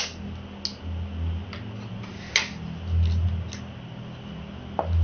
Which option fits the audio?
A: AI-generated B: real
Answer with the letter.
B